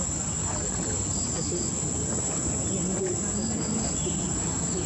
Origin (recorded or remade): recorded